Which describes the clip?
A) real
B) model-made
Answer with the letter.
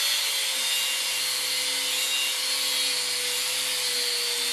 A